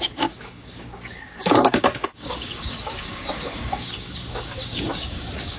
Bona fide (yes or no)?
no